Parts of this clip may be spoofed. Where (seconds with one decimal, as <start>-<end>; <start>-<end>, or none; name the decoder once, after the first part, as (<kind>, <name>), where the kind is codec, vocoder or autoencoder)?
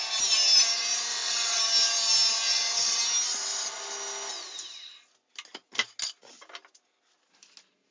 1.1-1.6 (vocoder, WaveNeXt); 2.5-3.0